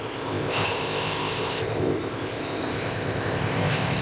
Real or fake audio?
fake